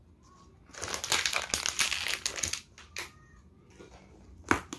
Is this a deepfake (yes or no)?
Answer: no